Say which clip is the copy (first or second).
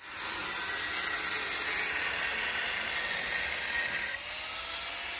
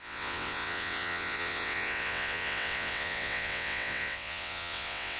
second